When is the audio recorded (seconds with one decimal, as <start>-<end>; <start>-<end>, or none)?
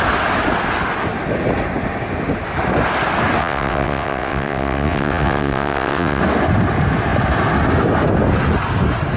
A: 0.0-3.4; 6.2-9.2